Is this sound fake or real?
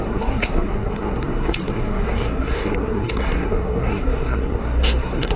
fake